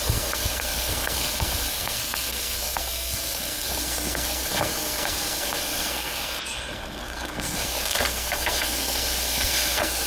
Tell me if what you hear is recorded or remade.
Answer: remade